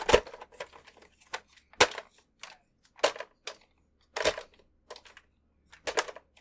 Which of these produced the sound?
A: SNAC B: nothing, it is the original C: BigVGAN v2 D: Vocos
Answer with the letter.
B